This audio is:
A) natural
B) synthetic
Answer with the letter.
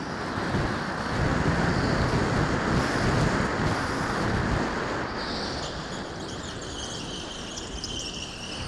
A